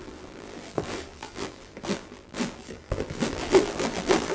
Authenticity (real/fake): fake